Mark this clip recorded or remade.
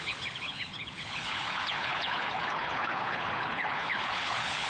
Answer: remade